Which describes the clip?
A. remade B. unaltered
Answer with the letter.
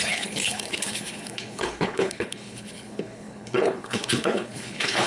A